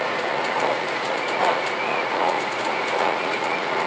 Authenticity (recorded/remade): remade